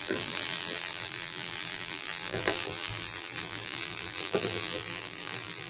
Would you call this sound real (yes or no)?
no